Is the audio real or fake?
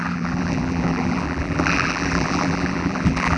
fake